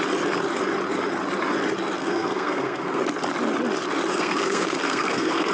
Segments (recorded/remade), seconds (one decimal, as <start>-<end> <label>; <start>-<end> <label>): 0.0-2.0 recorded; 2.0-3.0 remade; 3.0-4.1 recorded; 4.1-5.5 remade

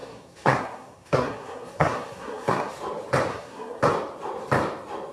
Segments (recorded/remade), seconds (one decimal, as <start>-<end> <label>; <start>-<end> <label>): 0.0-2.7 remade; 2.7-3.3 recorded; 3.3-3.8 remade; 3.8-5.1 recorded

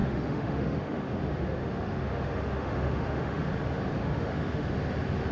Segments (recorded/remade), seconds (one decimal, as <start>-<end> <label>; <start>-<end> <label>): 0.0-1.2 remade; 1.2-1.6 recorded; 1.6-3.4 remade; 3.4-4.0 recorded; 4.0-4.7 remade; 4.7-5.3 recorded

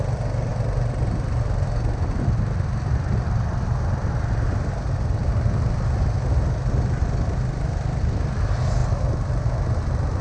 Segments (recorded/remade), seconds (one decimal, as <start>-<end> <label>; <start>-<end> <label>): 0.0-0.5 recorded; 0.5-4.0 remade; 4.0-10.2 recorded

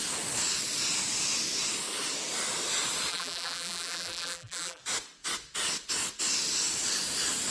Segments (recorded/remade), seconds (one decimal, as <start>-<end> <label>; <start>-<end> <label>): 0.0-3.1 recorded; 3.1-4.8 remade; 4.8-7.5 recorded

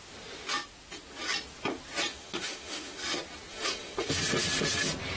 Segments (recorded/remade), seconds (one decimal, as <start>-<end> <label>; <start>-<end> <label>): 0.0-2.1 recorded; 2.1-3.0 remade; 3.0-3.5 recorded; 3.5-4.2 remade; 4.2-5.2 recorded